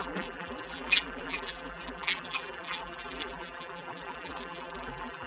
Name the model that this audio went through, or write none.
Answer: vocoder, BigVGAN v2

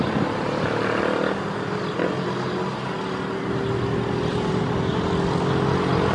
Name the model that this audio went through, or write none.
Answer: none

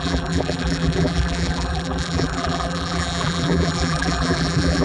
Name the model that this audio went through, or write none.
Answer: vocoder, BigVGAN v2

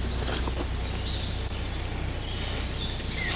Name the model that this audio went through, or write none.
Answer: none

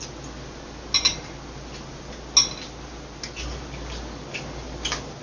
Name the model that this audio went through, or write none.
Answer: none